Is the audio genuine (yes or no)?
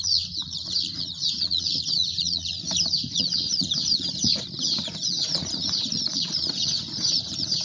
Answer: no